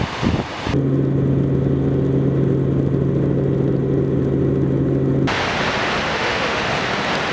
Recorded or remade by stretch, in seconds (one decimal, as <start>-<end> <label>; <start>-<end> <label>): 0.0-6.1 recorded; 6.1-6.6 remade; 6.6-7.3 recorded